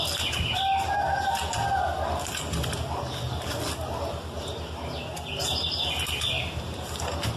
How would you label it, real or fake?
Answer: real